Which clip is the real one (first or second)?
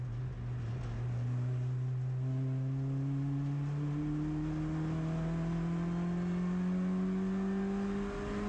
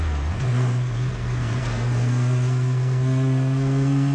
first